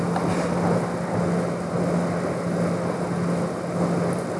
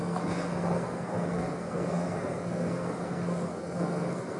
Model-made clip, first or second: second